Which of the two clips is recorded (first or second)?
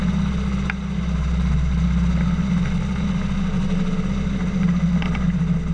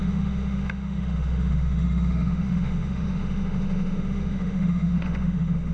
first